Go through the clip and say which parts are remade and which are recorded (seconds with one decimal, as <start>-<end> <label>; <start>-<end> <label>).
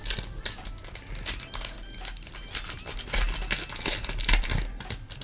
0.0-5.2 recorded